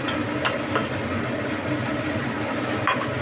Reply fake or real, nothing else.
real